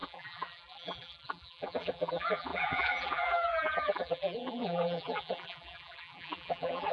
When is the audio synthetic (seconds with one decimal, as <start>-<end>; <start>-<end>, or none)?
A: 0.0-6.9